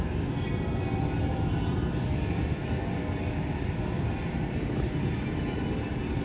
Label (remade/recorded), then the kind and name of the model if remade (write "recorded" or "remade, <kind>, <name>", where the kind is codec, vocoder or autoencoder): recorded